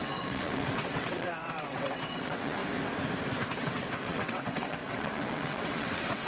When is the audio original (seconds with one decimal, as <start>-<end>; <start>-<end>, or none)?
2.6-3.6